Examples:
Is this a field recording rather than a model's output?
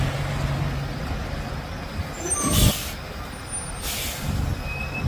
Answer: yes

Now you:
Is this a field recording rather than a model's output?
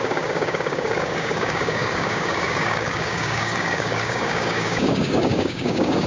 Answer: no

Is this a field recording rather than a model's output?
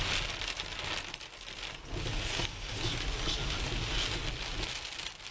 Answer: yes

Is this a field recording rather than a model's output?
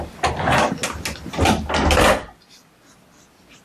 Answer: yes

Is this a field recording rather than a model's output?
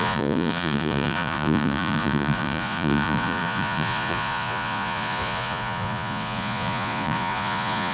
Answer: no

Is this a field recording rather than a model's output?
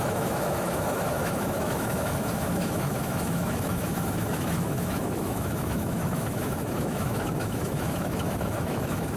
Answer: no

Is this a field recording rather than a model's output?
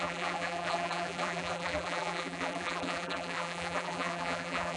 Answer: no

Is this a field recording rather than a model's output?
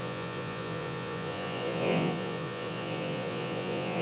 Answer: no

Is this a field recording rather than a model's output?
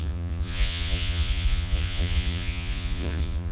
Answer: no